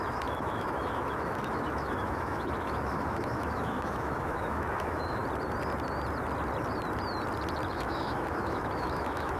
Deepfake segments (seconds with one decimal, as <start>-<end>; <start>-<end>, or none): 0.0-5.2; 7.7-9.4